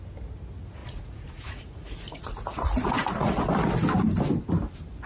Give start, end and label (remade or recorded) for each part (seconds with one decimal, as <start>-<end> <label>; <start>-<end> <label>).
0.0-0.8 recorded; 0.8-3.4 remade; 3.4-5.1 recorded